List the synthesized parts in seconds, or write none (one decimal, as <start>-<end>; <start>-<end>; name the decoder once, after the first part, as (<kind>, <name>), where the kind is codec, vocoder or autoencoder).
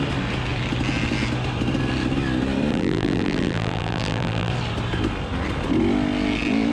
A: 2.7-4.5 (vocoder, BigVGAN v2)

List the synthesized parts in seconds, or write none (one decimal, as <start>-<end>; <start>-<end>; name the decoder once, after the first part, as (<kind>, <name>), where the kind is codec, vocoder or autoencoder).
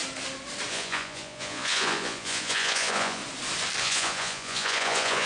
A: 0.7-3.2 (vocoder, Vocos); 3.8-5.3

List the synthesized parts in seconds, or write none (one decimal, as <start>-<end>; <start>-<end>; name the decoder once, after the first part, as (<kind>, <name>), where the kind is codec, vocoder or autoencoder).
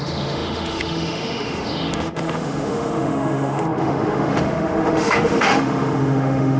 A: 0.0-6.6 (autoencoder, DAC-VAE)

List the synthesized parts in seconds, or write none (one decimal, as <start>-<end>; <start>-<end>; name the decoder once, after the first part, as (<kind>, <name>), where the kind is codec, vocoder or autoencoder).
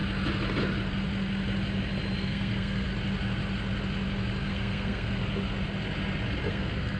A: 2.2-2.9 (codec, SNAC); 4.5-5.2; 6.5-7.0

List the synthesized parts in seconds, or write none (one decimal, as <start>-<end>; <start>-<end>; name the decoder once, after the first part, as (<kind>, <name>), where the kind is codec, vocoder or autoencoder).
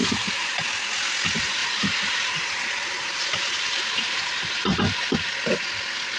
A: 0.0-0.6 (vocoder, BigVGAN v2); 1.6-5.3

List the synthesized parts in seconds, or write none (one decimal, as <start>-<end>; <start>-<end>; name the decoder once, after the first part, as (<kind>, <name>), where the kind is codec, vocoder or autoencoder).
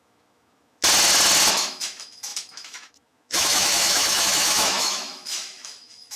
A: 0.0-0.8 (autoencoder, DAC-VAE); 1.5-6.2